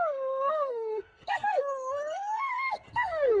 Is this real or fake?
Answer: fake